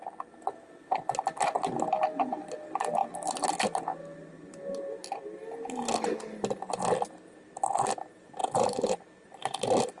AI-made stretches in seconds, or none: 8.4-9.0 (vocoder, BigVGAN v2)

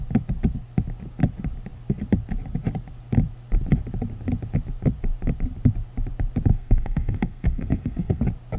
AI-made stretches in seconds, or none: 6.5-8.2 (codec, SNAC)

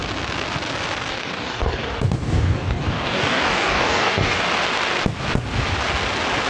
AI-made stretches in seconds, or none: 1.1-4.4 (codec, DAC)